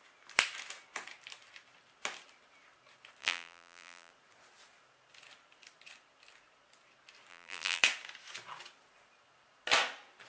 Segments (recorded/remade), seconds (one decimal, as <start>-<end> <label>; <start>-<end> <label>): 0.0-3.2 recorded; 3.2-4.1 remade; 4.1-7.3 recorded; 7.3-7.8 remade; 7.8-10.3 recorded